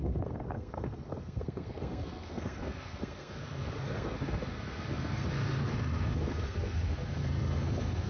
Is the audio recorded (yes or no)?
no